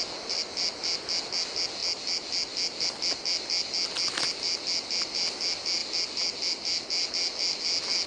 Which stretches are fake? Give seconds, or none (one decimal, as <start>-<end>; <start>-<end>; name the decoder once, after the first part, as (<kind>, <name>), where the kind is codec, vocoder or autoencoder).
none